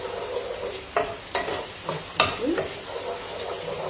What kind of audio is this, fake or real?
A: fake